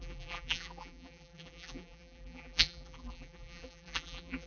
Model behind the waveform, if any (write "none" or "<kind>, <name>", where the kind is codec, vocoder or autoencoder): vocoder, BigVGAN v2